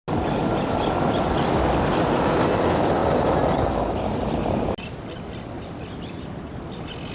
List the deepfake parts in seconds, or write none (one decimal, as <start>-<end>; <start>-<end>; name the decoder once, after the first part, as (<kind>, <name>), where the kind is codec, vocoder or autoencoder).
none